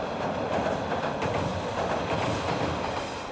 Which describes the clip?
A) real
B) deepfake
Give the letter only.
A